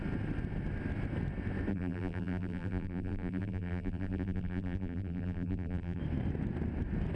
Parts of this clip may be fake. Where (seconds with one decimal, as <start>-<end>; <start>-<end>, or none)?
1.7-6.0